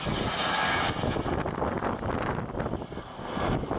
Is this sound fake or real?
real